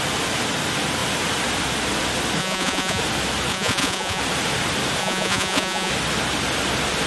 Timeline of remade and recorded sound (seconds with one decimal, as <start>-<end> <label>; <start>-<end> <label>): 0.0-2.4 recorded; 2.4-3.0 remade; 3.0-3.5 recorded; 3.5-4.2 remade; 4.2-5.0 recorded; 5.0-5.9 remade; 5.9-7.1 recorded